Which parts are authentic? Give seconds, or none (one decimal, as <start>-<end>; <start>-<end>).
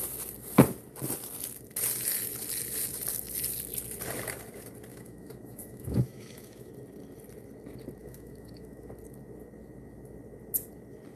0.0-4.9; 6.7-8.0; 8.9-11.2